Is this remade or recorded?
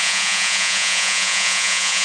remade